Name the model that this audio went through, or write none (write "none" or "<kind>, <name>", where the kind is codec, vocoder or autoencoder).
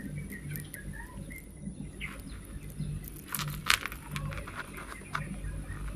none